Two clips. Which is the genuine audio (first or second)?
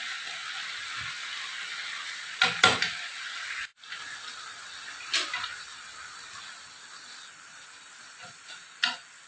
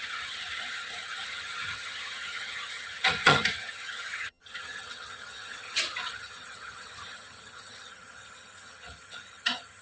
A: first